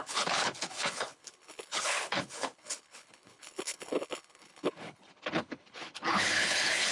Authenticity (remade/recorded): remade